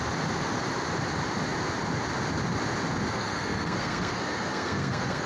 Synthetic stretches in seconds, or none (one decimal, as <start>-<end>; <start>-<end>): 3.1-5.3